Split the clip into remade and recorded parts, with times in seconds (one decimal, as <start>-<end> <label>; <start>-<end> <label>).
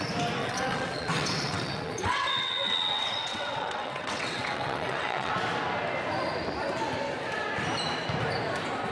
0.0-0.4 recorded; 0.4-5.3 remade; 5.3-8.9 recorded